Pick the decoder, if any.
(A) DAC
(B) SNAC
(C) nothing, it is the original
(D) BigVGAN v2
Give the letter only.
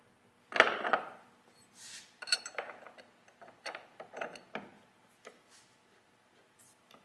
C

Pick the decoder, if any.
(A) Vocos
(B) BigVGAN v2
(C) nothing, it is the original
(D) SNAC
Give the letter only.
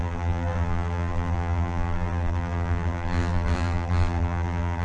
B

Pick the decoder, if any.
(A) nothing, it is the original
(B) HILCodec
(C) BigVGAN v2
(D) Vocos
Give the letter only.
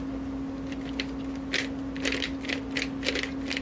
A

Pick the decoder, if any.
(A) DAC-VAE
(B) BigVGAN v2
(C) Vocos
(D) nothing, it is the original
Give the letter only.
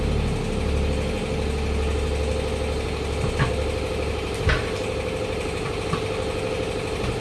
D